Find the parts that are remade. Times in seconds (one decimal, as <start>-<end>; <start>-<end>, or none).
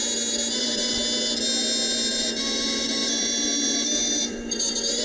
0.6-1.0; 2.1-5.0